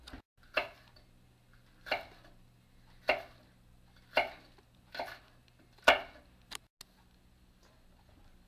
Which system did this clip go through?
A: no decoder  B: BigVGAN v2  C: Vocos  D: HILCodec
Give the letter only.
A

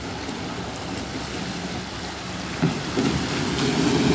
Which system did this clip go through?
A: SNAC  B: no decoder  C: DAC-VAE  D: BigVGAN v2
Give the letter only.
B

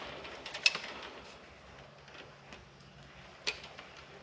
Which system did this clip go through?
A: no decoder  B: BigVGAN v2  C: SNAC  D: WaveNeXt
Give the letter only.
A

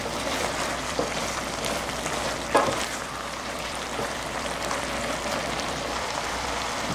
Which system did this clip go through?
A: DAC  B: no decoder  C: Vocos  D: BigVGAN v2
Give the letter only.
D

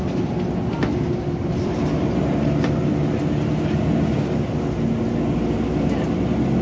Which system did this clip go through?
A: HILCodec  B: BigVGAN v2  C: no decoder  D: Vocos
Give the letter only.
C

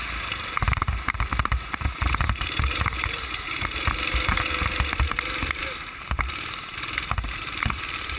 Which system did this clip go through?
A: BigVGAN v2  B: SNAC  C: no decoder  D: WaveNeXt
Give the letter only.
A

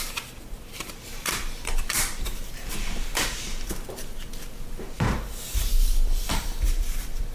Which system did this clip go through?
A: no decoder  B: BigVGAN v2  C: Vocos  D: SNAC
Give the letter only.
B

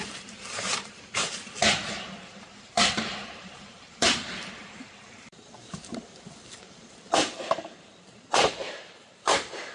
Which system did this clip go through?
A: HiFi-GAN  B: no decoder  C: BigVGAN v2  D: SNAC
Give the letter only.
C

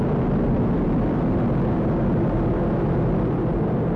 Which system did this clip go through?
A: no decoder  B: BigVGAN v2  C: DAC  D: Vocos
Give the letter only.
A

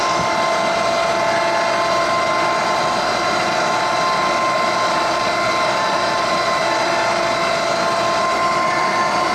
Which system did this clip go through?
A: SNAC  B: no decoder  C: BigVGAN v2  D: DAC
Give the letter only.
B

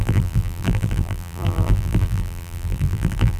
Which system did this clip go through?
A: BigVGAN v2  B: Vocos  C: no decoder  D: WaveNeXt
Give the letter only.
A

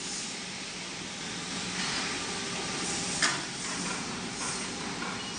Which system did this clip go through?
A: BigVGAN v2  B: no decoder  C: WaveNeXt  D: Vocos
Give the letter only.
B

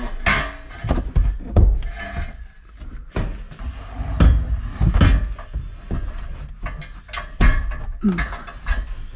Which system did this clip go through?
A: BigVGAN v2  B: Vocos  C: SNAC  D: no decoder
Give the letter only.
D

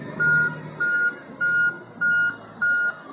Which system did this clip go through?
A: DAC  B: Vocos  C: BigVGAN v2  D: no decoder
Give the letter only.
D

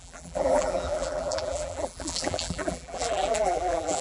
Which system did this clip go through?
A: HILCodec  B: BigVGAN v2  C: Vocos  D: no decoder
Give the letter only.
B